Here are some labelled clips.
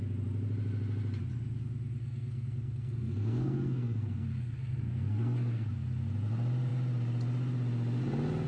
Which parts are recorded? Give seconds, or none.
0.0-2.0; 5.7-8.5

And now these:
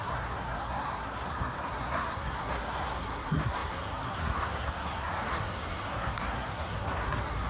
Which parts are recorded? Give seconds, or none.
none

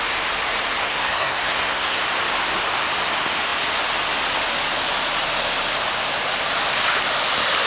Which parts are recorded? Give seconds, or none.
0.0-0.8; 2.0-7.7

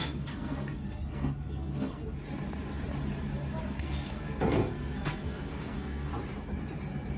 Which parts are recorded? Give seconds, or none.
2.0-3.6; 6.1-7.2

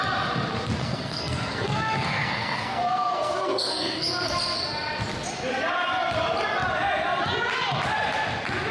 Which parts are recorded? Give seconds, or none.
0.0-0.8; 4.6-8.7

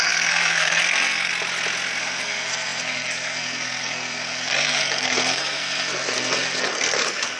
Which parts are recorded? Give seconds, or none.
1.3-2.0